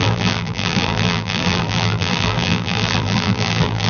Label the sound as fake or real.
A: fake